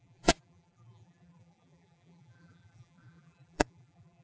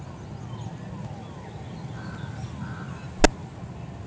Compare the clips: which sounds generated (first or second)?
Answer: first